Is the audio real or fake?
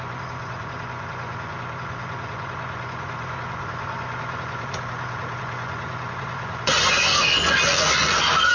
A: fake